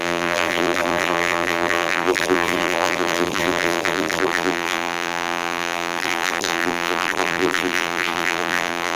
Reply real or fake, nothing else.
fake